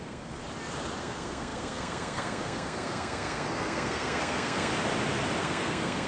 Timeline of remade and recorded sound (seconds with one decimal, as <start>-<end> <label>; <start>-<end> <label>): 0.0-0.4 remade; 0.4-1.0 recorded; 1.0-4.7 remade; 4.7-5.4 recorded; 5.4-6.1 remade